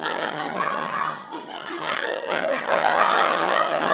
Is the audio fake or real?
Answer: fake